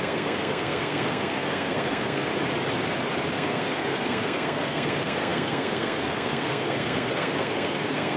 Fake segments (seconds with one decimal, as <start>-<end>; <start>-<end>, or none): 0.0-2.3; 3.3-8.2